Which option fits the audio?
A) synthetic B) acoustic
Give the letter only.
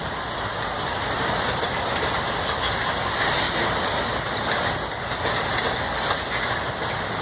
B